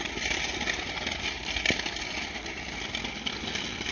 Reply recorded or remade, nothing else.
recorded